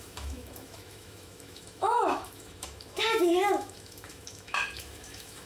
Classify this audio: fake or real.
fake